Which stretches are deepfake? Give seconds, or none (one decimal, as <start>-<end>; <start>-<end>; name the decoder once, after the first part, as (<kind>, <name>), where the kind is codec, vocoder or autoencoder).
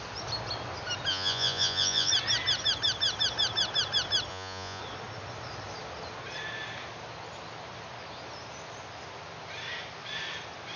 1.1-2.1 (vocoder, Vocos); 4.3-4.8